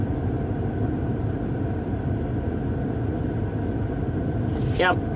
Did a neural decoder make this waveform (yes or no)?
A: no